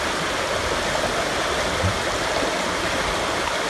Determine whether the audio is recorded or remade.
recorded